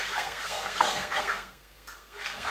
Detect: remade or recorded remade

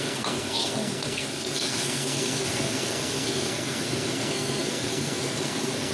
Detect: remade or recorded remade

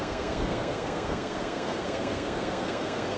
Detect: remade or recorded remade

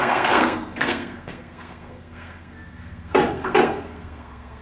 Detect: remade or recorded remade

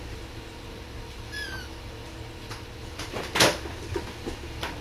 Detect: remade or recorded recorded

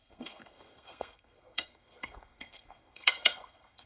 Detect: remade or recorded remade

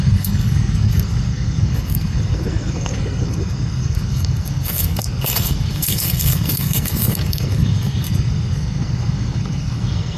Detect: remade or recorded remade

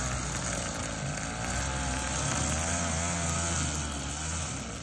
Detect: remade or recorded recorded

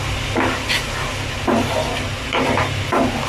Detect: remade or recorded recorded